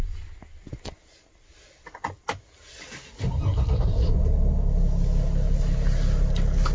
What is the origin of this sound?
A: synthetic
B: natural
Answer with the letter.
B